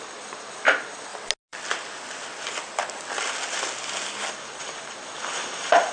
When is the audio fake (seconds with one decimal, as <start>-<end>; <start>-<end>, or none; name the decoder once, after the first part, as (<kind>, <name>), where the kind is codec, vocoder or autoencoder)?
0.0-1.1 (vocoder, BigVGAN v2); 4.3-5.9